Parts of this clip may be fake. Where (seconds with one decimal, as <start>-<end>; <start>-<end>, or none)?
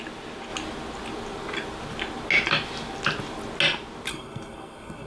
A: 4.1-5.1